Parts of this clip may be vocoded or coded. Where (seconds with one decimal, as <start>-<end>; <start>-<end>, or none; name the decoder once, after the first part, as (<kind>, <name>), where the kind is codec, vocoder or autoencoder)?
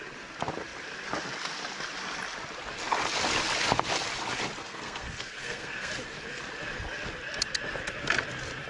4.6-5.9 (codec, SNAC)